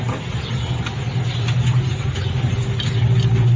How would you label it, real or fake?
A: real